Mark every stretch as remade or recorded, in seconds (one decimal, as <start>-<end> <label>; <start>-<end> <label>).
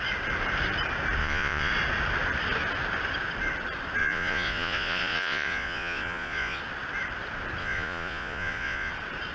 0.0-1.2 recorded; 1.2-1.7 remade; 1.7-4.0 recorded; 4.0-6.6 remade; 6.6-7.6 recorded; 7.6-8.9 remade; 8.9-9.3 recorded